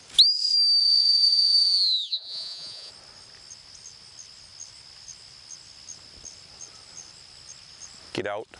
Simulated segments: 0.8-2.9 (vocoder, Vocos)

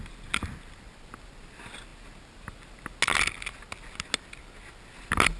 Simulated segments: none